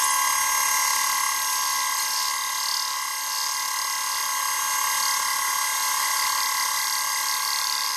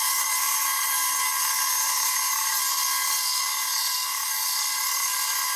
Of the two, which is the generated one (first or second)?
second